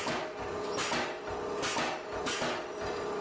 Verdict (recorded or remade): recorded